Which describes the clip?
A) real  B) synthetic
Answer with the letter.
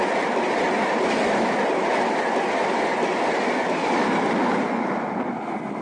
A